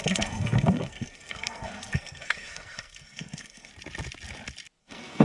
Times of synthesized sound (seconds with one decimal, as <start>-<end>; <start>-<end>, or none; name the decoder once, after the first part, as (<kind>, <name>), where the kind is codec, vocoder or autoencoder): 0.0-3.7 (codec, SNAC); 4.8-5.2